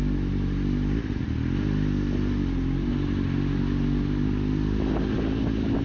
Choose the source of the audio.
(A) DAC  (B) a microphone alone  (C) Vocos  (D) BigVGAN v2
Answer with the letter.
B